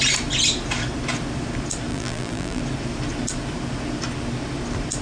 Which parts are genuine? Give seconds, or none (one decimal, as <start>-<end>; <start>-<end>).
0.0-1.9; 2.6-5.0